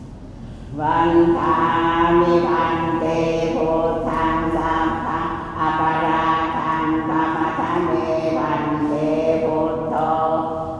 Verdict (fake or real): real